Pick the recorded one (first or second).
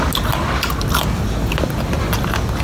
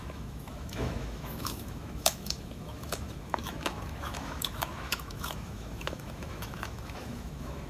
first